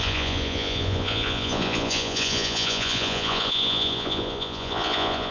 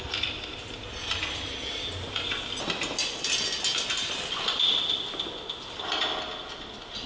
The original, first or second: second